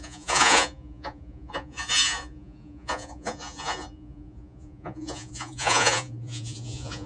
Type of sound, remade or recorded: remade